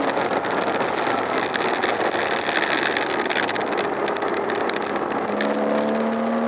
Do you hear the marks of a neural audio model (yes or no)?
no